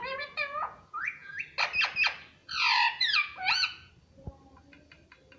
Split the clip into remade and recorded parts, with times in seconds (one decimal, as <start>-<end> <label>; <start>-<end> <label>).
0.0-1.4 remade; 1.4-2.4 recorded; 2.4-3.9 remade; 3.9-5.4 recorded